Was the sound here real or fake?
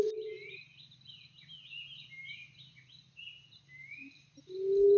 real